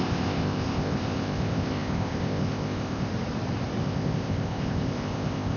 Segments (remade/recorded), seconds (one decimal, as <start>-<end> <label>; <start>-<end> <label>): 0.0-3.1 remade; 3.1-3.8 recorded; 3.8-5.6 remade